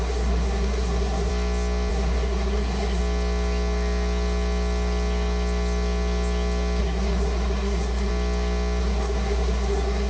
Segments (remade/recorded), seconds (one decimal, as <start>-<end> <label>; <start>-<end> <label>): 0.0-1.3 remade; 1.3-1.9 recorded; 1.9-3.0 remade; 3.0-6.8 recorded; 6.8-8.1 remade; 8.1-8.8 recorded; 8.8-10.1 remade